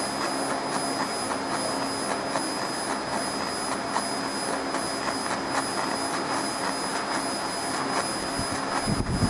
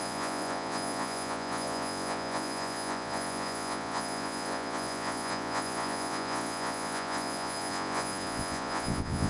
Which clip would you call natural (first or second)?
first